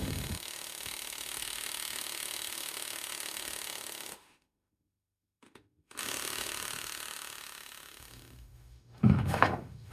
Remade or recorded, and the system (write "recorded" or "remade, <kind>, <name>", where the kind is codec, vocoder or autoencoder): remade, autoencoder, DAC-VAE